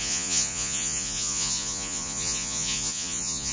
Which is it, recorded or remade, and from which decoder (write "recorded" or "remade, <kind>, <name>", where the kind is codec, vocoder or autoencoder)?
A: remade, vocoder, Vocos